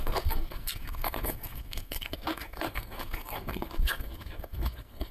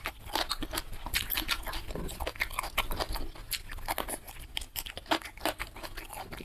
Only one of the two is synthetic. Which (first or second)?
first